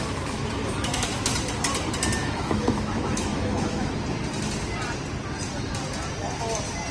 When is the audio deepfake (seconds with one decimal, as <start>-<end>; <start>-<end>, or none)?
0.6-1.3; 2.2-3.9